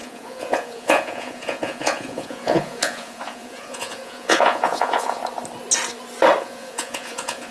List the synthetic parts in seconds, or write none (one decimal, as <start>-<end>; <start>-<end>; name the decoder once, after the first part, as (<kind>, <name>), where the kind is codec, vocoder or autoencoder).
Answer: 0.0-5.2 (vocoder, Vocos); 6.4-7.5